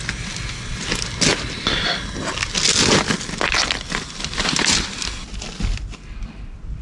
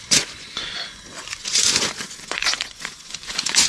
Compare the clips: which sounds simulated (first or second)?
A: second